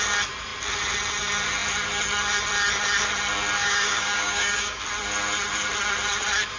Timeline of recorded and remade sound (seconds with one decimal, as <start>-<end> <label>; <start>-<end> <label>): 0.0-3.6 recorded; 3.6-4.8 remade; 4.8-6.6 recorded